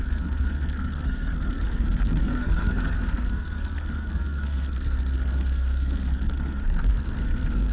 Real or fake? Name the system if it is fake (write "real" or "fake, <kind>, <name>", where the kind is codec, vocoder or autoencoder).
fake, codec, SNAC